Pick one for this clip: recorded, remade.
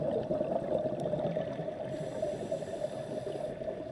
recorded